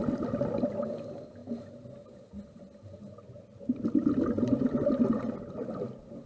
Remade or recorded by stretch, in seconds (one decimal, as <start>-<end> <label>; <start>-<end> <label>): 0.0-6.3 recorded